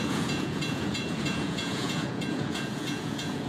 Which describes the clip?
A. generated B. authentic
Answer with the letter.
A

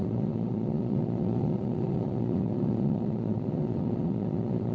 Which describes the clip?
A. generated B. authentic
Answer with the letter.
A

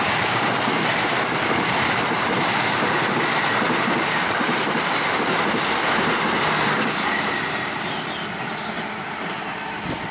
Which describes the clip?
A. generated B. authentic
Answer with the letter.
B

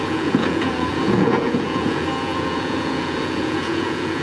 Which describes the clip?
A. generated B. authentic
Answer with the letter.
A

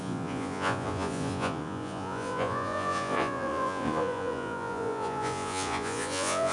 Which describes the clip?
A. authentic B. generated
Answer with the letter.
B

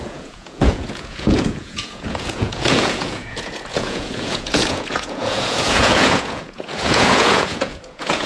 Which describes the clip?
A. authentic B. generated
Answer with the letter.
B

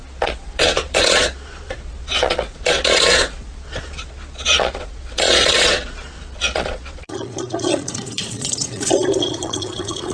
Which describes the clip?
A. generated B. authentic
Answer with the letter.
A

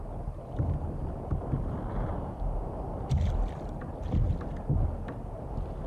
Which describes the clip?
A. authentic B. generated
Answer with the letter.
A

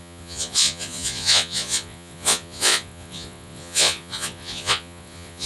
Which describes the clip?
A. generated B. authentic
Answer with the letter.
A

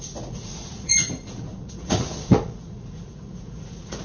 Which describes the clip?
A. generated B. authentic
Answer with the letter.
A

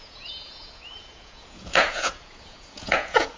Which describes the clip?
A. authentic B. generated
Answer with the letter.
B